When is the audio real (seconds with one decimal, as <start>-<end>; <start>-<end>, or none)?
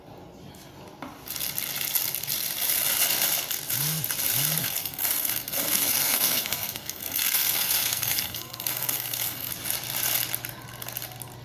0.0-4.6; 9.5-11.4